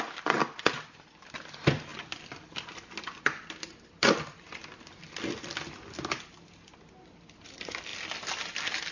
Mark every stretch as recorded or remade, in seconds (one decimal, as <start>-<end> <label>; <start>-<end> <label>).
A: 0.0-8.9 recorded